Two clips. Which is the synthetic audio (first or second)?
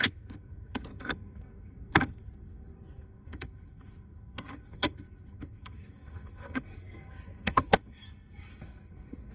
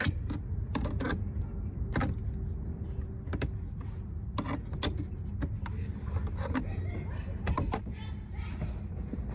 first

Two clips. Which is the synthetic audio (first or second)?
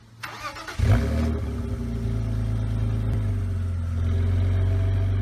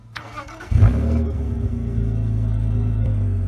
second